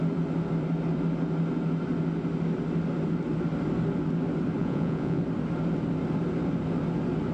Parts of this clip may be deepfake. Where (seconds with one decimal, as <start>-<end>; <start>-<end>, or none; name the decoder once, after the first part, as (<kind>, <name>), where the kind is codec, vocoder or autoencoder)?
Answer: 4.6-5.2 (vocoder, Vocos)